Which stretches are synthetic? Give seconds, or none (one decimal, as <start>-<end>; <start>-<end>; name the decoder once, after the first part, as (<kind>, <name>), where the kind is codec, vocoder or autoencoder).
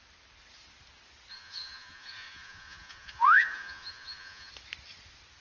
1.3-4.5 (vocoder, Vocos)